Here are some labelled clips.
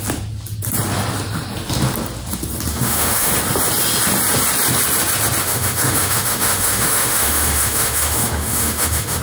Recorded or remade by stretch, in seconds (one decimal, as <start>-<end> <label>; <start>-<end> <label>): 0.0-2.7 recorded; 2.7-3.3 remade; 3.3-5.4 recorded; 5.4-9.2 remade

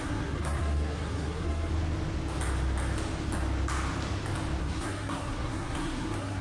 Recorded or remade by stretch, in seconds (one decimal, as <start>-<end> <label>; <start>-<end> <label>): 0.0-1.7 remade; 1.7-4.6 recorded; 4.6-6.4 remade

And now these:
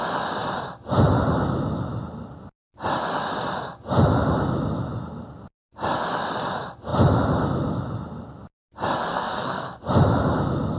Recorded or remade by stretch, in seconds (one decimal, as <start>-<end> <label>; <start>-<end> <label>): 0.0-9.1 recorded; 9.1-9.8 remade; 9.8-10.8 recorded

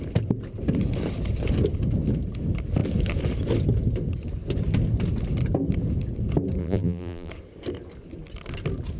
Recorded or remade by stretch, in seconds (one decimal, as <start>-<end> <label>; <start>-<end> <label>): 0.0-6.6 recorded; 6.6-7.3 remade; 7.3-9.0 recorded

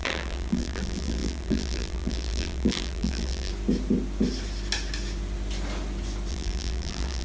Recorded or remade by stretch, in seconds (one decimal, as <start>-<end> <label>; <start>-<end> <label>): 0.0-3.5 remade; 3.5-6.3 recorded; 6.3-7.2 remade